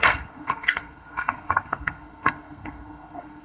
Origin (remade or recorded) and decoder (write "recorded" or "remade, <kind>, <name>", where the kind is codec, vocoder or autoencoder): remade, codec, SNAC